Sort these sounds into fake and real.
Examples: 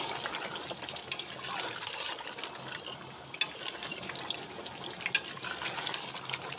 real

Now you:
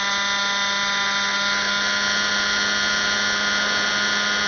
real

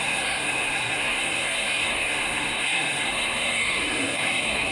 fake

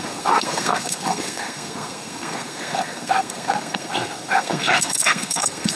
fake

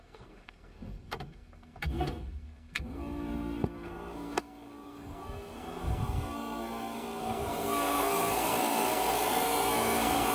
fake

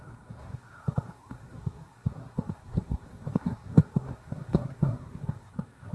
fake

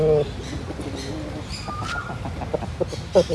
real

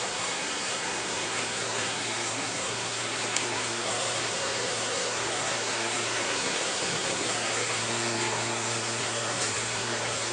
fake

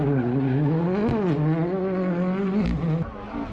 real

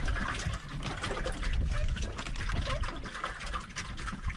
real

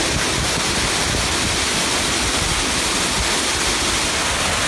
real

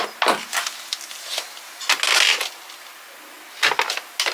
real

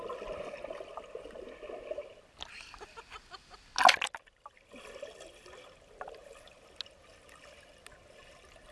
real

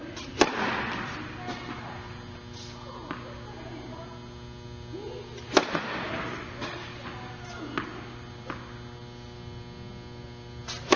real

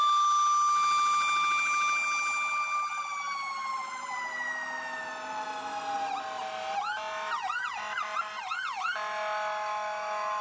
real